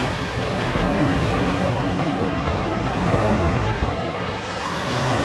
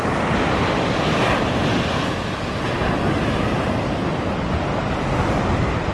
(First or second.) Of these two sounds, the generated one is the first